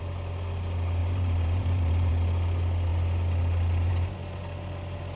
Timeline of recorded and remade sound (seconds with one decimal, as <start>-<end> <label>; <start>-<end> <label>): 0.0-1.0 recorded; 1.0-2.1 remade; 2.1-5.2 recorded